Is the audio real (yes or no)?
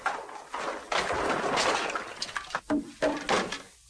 yes